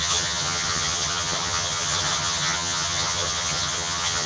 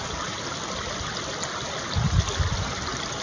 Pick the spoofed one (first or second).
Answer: first